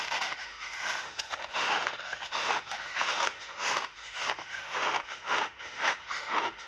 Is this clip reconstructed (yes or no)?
yes